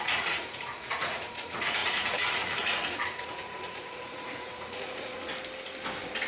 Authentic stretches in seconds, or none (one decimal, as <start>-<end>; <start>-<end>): 5.3-6.3